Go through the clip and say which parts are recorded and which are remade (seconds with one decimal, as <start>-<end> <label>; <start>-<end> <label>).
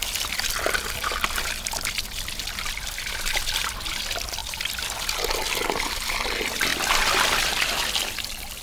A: 0.0-2.6 recorded; 2.6-4.4 remade; 4.4-5.6 recorded; 5.6-6.7 remade; 6.7-8.6 recorded